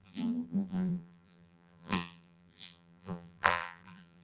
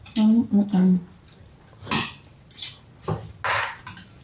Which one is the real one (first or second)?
second